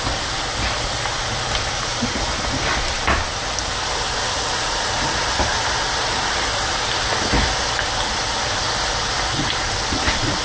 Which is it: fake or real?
real